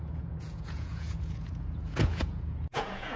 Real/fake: fake